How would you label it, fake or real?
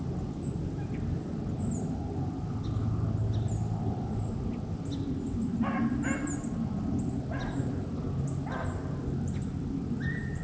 real